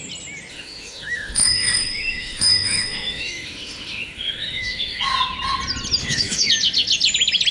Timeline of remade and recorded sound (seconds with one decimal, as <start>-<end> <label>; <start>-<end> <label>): 0.0-0.5 recorded; 0.5-5.0 remade; 5.0-6.0 recorded; 6.0-6.5 remade; 6.5-7.5 recorded